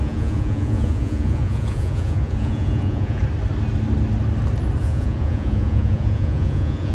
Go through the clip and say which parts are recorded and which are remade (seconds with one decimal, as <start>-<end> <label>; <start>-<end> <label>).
0.0-3.2 remade; 3.2-4.8 recorded; 4.8-6.9 remade